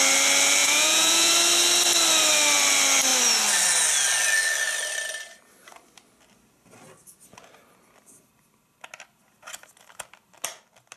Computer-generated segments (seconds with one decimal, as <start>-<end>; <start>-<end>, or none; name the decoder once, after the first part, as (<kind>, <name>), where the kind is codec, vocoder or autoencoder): 0.6-1.3 (vocoder, Vocos)